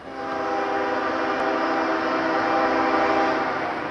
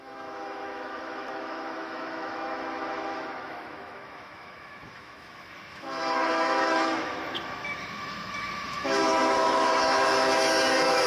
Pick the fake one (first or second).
second